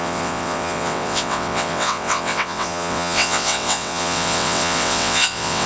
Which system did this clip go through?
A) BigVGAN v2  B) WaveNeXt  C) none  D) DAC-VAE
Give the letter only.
B